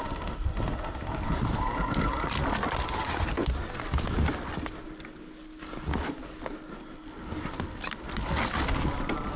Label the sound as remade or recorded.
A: recorded